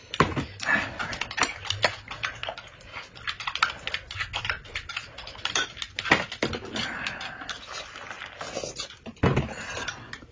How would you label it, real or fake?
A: real